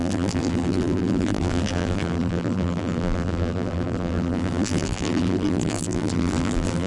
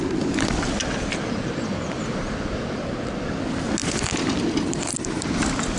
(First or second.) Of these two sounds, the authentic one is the second